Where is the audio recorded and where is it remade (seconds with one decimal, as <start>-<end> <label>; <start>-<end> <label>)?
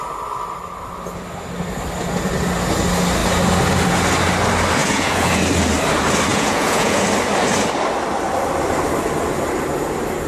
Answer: 0.0-4.8 recorded; 4.8-5.4 remade; 5.4-6.3 recorded; 6.3-7.0 remade; 7.0-10.3 recorded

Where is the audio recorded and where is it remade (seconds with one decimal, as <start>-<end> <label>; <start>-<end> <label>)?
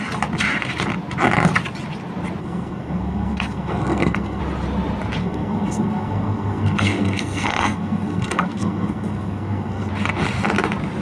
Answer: 0.0-2.4 recorded; 2.4-4.4 remade; 4.4-5.2 recorded; 5.2-9.9 remade; 9.9-11.0 recorded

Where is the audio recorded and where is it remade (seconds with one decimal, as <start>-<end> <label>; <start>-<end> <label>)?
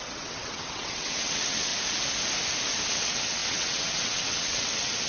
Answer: 0.0-1.7 remade; 1.7-2.9 recorded; 2.9-5.1 remade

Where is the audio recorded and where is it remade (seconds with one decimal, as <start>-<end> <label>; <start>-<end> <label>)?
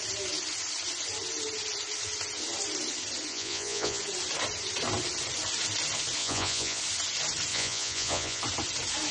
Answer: 0.0-3.3 recorded; 3.3-4.0 remade; 4.0-6.2 recorded; 6.2-6.8 remade; 6.8-7.5 recorded; 7.5-8.4 remade; 8.4-9.1 recorded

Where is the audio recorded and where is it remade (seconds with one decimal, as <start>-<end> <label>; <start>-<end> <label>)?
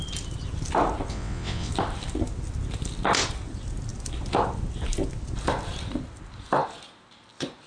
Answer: 0.0-1.1 recorded; 1.1-1.7 remade; 1.7-7.7 recorded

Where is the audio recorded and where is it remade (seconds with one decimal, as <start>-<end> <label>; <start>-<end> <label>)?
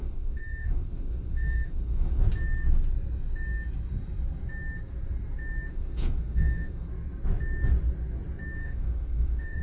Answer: 0.0-2.2 remade; 2.2-5.7 recorded; 5.7-6.9 remade; 6.9-8.6 recorded; 8.6-9.6 remade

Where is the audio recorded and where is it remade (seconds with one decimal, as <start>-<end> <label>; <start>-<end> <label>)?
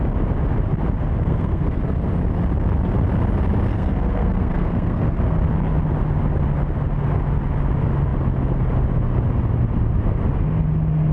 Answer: 0.0-1.2 recorded; 1.2-1.8 remade; 1.8-3.7 recorded; 3.7-5.4 remade; 5.4-11.1 recorded